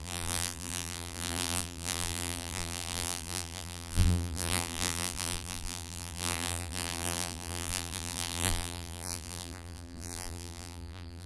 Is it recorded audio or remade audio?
remade